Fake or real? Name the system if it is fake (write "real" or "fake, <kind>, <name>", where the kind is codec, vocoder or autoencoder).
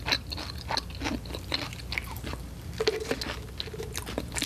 real